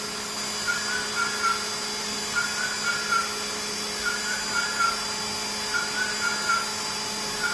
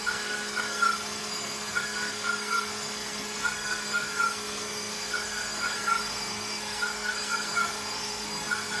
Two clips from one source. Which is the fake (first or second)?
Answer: second